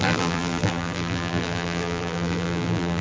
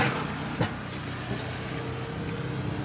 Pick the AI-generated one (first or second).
first